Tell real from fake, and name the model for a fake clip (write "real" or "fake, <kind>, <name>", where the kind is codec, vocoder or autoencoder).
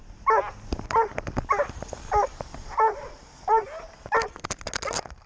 real